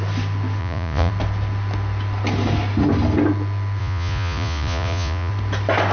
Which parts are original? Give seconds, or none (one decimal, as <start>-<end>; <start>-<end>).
0.0-0.6; 1.1-3.8; 5.3-5.9